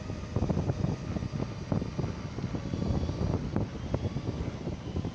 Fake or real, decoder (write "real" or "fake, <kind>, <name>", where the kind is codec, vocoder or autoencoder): real